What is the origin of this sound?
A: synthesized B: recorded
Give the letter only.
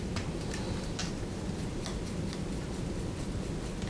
B